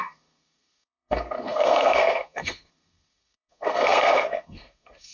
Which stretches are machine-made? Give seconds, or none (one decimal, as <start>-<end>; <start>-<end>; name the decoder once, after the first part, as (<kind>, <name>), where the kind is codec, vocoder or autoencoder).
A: 0.0-5.1 (codec, SNAC)